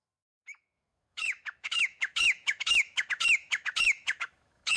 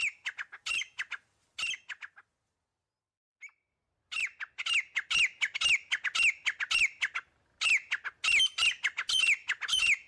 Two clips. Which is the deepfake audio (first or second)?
first